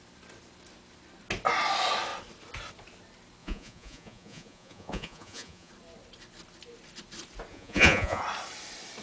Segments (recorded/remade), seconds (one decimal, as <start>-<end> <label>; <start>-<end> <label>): 0.0-3.4 recorded; 3.4-5.7 remade; 5.7-7.5 recorded; 7.5-8.2 remade; 8.2-9.0 recorded